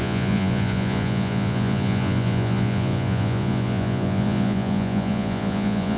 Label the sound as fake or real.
fake